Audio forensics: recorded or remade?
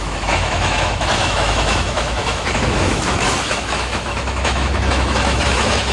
remade